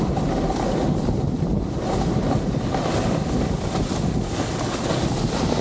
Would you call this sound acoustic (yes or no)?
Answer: yes